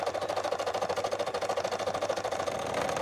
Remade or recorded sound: recorded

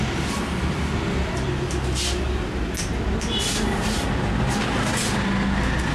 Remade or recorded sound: recorded